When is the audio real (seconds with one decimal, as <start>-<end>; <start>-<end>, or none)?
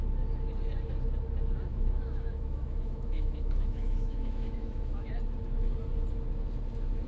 0.0-1.7; 5.1-7.1